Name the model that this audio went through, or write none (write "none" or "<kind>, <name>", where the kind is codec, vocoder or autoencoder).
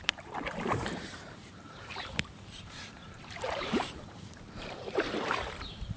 vocoder, BigVGAN v2